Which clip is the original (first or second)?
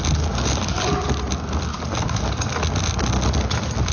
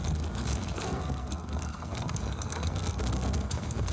first